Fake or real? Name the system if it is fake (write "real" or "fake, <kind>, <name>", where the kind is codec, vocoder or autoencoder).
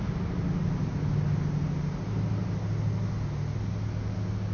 real